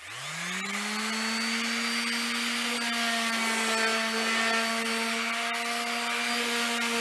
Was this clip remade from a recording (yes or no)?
no